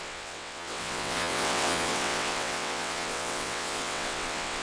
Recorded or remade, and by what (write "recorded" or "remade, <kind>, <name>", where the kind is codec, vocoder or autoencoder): remade, vocoder, WaveNeXt